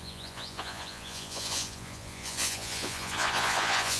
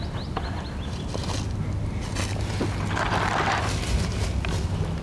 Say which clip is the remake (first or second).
first